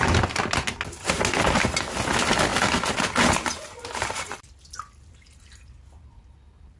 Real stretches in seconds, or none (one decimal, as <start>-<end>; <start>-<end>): 0.0-6.8